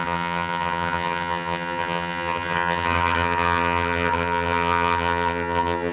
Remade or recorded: remade